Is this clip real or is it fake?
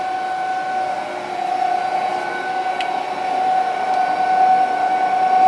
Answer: real